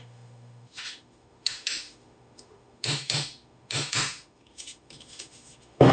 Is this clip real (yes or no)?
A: no